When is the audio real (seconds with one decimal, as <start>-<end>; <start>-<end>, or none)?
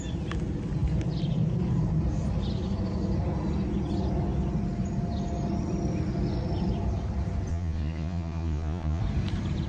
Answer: 0.0-7.5; 9.0-9.7